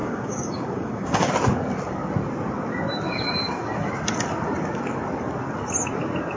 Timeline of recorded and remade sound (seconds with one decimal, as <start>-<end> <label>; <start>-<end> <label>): 0.0-1.3 remade; 1.3-6.4 recorded